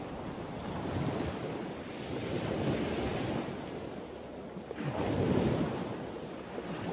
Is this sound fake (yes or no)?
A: no